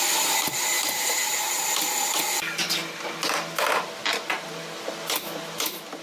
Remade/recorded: recorded